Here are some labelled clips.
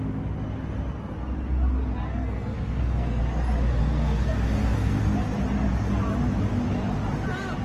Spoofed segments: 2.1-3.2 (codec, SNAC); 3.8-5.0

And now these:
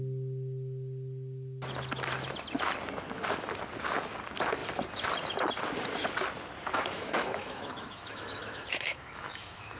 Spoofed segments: 6.7-9.8 (autoencoder, DAC-VAE)

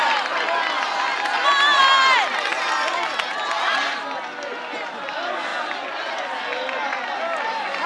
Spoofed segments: none

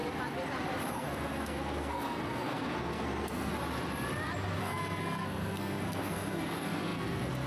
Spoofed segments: 0.9-3.5 (codec, SNAC); 4.6-7.5

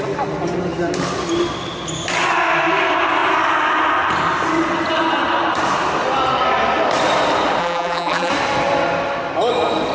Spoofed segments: 7.6-8.3 (vocoder, BigVGAN v2)

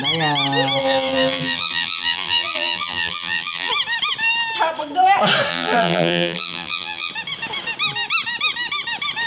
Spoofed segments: 0.8-3.7 (vocoder, BigVGAN v2); 5.5-7.1